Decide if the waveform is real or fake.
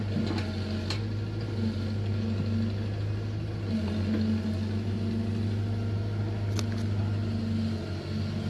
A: real